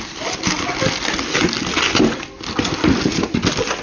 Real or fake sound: real